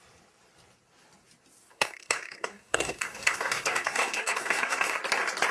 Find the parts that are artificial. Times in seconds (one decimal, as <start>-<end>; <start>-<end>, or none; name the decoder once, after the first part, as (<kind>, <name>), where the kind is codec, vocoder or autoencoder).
1.7-5.0 (codec, SNAC)